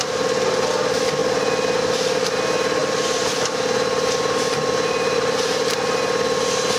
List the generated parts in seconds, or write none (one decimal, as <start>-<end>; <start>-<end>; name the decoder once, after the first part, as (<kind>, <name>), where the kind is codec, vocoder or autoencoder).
2.8-6.0 (vocoder, BigVGAN v2)